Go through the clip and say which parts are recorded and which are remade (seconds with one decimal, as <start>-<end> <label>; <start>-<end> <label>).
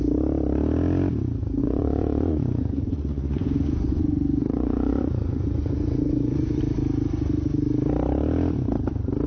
0.0-1.6 recorded; 1.6-6.6 remade; 6.6-9.3 recorded